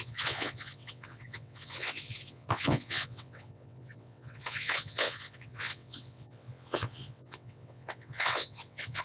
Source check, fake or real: fake